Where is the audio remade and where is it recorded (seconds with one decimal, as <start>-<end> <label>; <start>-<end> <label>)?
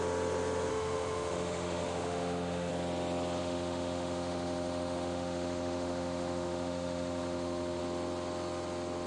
0.0-0.7 recorded; 0.7-2.7 remade; 2.7-3.4 recorded; 3.4-7.8 remade; 7.8-9.1 recorded